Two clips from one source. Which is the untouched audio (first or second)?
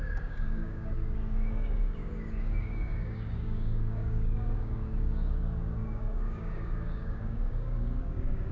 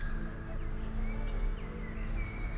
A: second